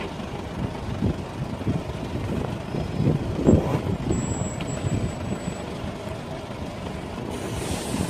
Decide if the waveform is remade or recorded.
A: recorded